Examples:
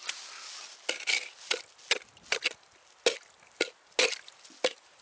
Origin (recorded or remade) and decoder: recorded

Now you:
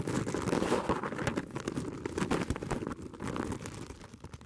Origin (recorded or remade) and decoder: recorded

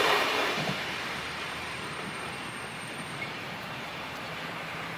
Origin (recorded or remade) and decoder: remade, vocoder, BigVGAN v2